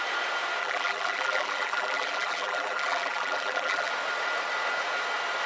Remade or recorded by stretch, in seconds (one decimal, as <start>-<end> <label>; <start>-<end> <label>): 0.0-0.6 recorded; 0.6-3.9 remade; 3.9-5.5 recorded